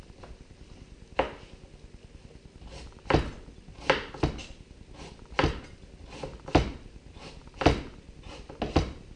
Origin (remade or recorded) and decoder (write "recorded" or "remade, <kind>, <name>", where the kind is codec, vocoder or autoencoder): recorded